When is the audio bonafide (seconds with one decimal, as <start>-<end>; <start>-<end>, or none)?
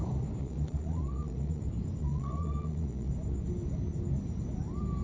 0.0-0.4; 1.6-2.0; 3.1-5.0